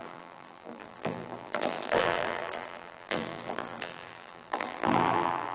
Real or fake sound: fake